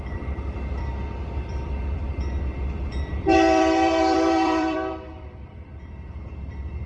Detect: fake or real fake